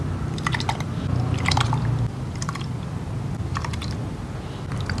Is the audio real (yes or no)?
yes